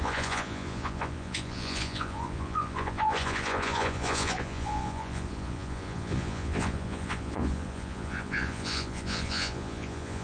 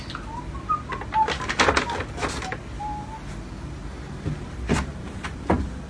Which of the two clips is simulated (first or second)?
first